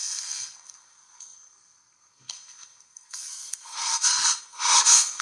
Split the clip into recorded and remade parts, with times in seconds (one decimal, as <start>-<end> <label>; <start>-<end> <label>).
0.0-5.2 remade